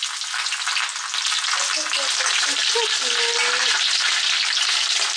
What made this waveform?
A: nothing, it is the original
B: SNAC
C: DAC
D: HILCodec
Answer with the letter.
A